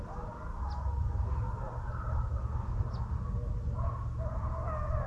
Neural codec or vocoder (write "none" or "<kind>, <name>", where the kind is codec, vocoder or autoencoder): none